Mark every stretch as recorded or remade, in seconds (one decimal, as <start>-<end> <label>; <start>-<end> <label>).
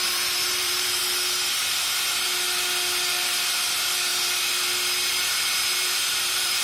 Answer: 0.0-1.0 remade; 1.0-3.1 recorded; 3.1-4.1 remade; 4.1-5.1 recorded; 5.1-6.6 remade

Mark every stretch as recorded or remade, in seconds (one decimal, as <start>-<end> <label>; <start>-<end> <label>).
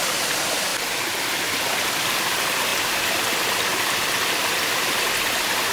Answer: 0.0-5.7 recorded